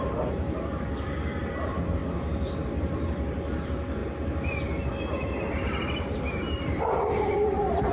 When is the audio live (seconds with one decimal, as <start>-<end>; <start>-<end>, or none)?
2.0-2.7; 4.0-4.8

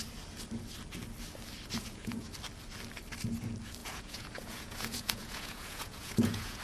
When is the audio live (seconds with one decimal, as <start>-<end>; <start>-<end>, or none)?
0.0-1.8; 2.3-3.8